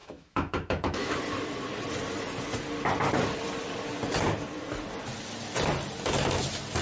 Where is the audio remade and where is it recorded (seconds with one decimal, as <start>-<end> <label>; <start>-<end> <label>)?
0.0-1.2 remade; 1.2-6.8 recorded